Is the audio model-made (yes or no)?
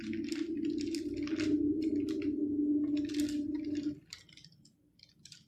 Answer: no